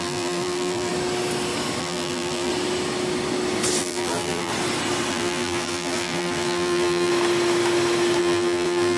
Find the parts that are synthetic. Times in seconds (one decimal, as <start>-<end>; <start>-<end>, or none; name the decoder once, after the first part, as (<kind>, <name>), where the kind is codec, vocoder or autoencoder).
0.0-0.9 (vocoder, BigVGAN v2); 1.8-2.5; 3.8-4.5; 5.1-7.1; 8.2-9.0